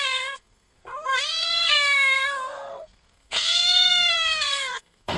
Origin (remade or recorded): remade